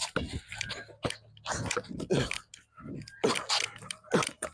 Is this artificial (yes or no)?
no